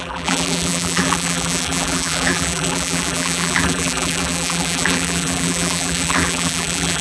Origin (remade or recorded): remade